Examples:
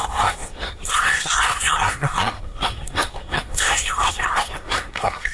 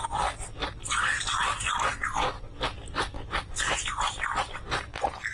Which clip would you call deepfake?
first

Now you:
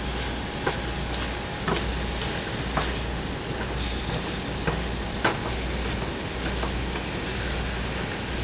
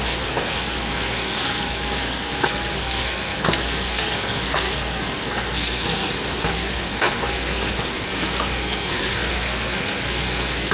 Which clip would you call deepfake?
second